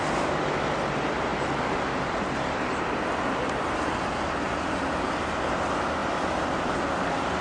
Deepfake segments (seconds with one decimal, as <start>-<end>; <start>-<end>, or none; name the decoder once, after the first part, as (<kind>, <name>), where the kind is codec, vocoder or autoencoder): none